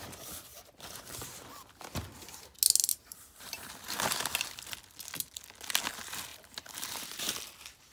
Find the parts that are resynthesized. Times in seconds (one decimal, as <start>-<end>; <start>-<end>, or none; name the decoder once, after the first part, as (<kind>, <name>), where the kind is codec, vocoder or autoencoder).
0.5-1.1 (vocoder, BigVGAN v2); 2.9-4.6; 6.3-7.4